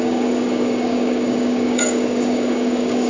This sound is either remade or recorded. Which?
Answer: remade